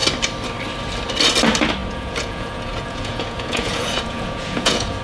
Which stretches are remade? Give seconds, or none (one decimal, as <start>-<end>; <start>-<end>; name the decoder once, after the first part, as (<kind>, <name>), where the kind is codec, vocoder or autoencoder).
1.8-5.0 (vocoder, Vocos)